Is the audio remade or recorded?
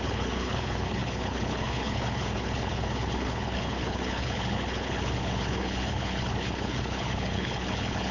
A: remade